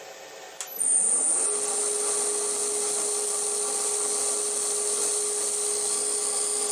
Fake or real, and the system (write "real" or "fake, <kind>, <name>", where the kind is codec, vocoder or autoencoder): real